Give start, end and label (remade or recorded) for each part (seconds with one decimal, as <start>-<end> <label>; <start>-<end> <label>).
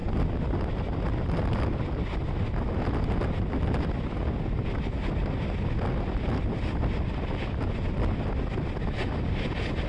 0.0-9.9 recorded